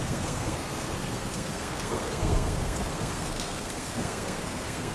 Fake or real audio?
fake